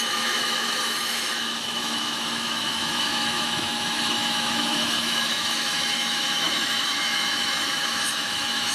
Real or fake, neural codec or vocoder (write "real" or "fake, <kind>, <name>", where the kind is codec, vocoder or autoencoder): fake, autoencoder, DAC-VAE